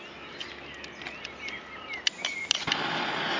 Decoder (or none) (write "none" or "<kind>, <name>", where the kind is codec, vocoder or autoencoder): none